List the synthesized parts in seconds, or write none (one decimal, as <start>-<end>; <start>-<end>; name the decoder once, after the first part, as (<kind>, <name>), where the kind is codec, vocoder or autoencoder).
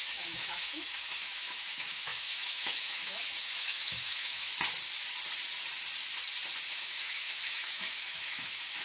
0.0-4.5 (autoencoder, DAC-VAE); 6.7-8.8